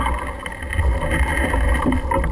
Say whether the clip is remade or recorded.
recorded